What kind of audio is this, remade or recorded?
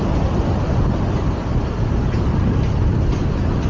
recorded